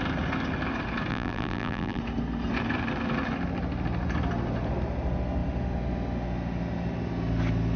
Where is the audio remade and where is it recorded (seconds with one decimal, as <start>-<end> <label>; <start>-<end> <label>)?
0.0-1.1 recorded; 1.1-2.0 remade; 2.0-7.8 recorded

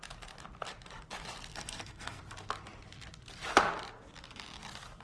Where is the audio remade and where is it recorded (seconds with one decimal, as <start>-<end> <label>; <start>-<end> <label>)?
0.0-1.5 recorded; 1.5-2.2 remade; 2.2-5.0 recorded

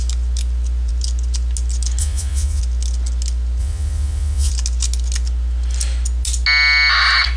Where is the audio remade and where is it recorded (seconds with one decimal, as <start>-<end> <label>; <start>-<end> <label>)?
0.0-2.0 recorded; 2.0-2.6 remade; 2.6-3.6 recorded; 3.6-4.5 remade; 4.5-7.4 recorded

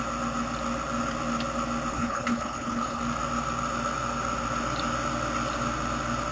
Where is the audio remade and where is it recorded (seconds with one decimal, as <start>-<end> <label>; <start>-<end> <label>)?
0.0-1.9 recorded; 1.9-3.0 remade; 3.0-6.3 recorded

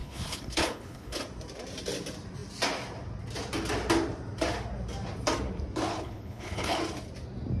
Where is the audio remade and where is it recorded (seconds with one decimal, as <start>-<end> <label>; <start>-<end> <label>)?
0.0-1.2 remade; 1.2-5.9 recorded; 5.9-6.8 remade; 6.8-7.6 recorded

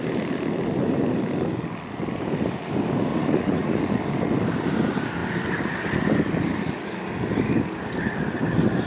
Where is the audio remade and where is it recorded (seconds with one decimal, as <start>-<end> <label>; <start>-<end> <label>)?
0.0-3.1 recorded; 3.1-3.8 remade; 3.8-8.9 recorded